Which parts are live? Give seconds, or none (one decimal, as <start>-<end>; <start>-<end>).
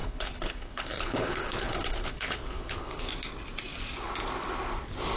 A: 3.1-5.2